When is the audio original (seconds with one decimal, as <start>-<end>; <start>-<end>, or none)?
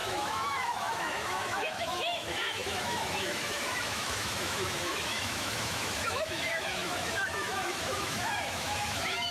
none